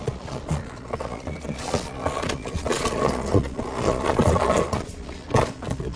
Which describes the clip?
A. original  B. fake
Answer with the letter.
B